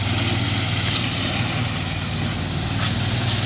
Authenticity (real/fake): real